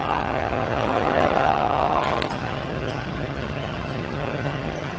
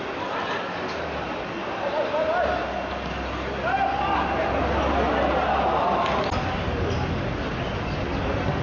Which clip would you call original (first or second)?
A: second